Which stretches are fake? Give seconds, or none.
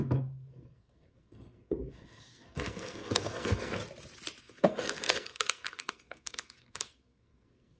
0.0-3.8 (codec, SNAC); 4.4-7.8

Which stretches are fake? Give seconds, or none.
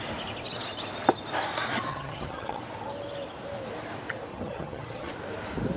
1.9-2.6 (vocoder, HiFi-GAN); 4.3-5.1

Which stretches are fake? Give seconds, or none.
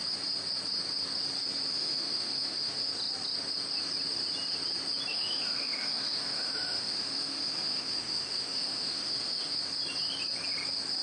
1.7-2.9 (autoencoder, DAC-VAE); 5.1-9.6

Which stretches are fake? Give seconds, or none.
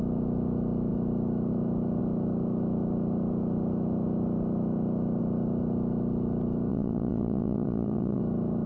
6.7-8.2 (vocoder, WaveNeXt)